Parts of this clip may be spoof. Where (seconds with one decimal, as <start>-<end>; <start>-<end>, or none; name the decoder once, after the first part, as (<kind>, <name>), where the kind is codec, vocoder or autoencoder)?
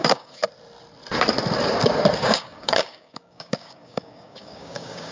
0.0-0.4 (codec, DAC); 2.2-5.1